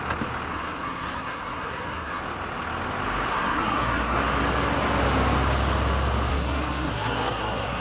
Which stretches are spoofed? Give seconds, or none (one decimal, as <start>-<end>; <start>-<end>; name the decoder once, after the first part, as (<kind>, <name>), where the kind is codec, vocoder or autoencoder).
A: 0.5-2.2 (codec, SNAC); 3.3-4.2; 6.3-7.8